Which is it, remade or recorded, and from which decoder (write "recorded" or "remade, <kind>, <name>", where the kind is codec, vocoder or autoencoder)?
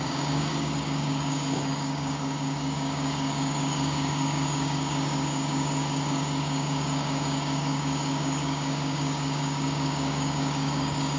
remade, codec, DAC